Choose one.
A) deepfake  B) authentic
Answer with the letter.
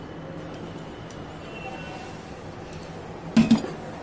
B